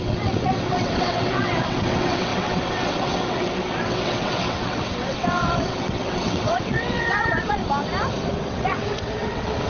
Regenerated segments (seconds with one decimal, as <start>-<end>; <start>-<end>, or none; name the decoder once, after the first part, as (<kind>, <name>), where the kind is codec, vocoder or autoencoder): 0.0-7.6 (vocoder, WaveNeXt); 8.4-9.7